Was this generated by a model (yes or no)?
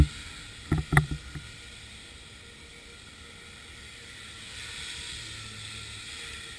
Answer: no